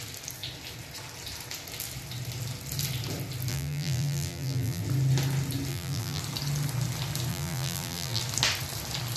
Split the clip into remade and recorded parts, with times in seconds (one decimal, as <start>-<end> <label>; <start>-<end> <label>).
0.0-3.5 recorded; 3.5-4.8 remade; 4.8-5.7 recorded; 5.7-6.2 remade; 6.2-7.3 recorded; 7.3-8.2 remade; 8.2-9.2 recorded